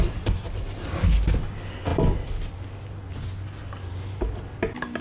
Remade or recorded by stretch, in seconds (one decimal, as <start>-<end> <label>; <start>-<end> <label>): 0.0-5.0 recorded